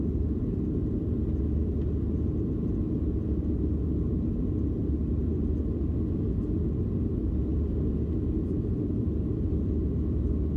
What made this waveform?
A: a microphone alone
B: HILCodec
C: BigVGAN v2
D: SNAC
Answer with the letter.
A